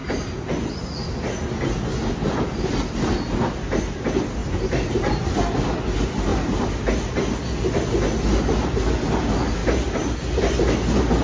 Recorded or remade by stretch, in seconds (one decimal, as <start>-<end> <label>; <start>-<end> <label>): 0.0-1.1 remade; 1.1-4.4 recorded; 4.4-5.3 remade; 5.3-11.2 recorded